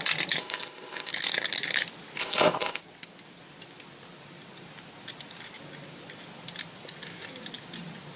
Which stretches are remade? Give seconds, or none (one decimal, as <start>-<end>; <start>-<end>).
0.4-1.1; 2.2-2.8